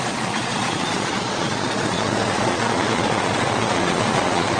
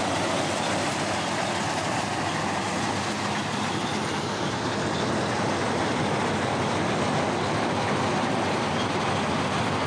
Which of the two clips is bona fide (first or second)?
second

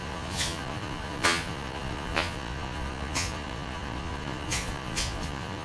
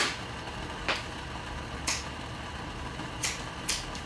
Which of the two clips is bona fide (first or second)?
second